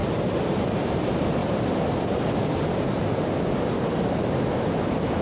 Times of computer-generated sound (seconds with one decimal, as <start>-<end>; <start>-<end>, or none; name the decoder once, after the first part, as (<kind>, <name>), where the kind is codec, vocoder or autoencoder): 0.0-1.0 (vocoder, BigVGAN v2); 1.4-4.5